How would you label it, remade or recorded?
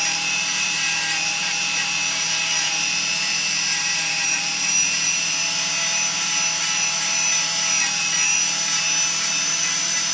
remade